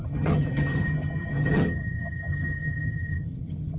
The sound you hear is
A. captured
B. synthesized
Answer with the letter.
B